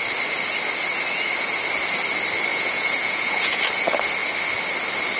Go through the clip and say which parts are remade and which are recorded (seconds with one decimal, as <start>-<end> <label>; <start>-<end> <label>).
0.0-2.5 recorded; 2.5-3.6 remade; 3.6-5.2 recorded